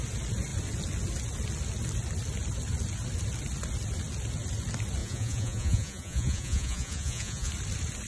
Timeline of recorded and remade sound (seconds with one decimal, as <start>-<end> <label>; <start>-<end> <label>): 0.0-5.0 recorded; 5.0-7.5 remade; 7.5-8.1 recorded

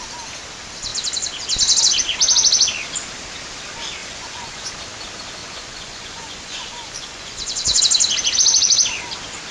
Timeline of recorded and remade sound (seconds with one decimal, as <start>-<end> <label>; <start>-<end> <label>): 0.0-4.0 recorded; 4.0-4.7 remade; 4.7-5.4 recorded; 5.4-7.8 remade; 7.8-9.5 recorded